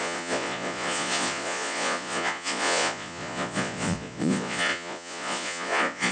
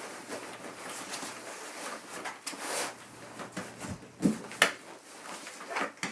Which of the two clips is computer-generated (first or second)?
first